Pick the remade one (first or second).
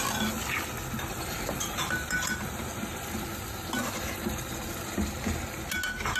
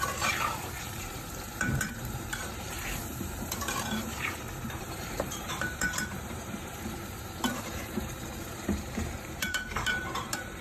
second